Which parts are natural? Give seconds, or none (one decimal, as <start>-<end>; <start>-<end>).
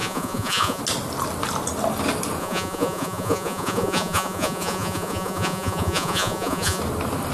0.8-2.4; 6.8-7.3